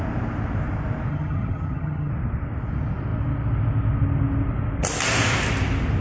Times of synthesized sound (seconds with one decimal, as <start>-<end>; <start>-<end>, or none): 1.1-2.1

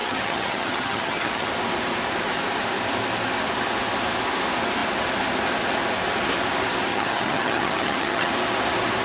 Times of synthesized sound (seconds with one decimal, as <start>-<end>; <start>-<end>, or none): 0.0-1.5; 6.9-8.3

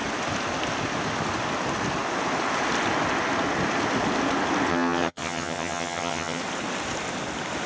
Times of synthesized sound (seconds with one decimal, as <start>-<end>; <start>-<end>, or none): 4.7-6.4

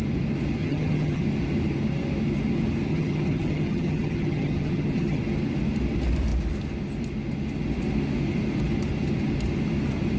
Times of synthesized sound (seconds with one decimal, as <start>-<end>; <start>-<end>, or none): 0.6-1.2; 2.9-5.2

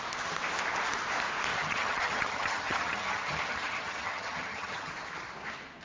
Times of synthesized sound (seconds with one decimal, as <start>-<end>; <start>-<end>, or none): 1.5-4.9

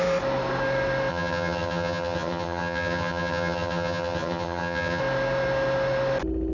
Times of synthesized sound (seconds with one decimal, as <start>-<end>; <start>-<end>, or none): 1.1-5.0

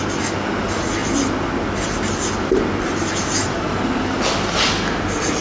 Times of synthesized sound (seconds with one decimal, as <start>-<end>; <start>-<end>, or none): none